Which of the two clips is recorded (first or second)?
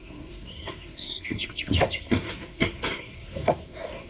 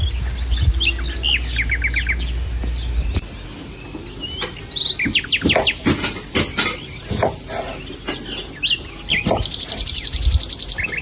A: second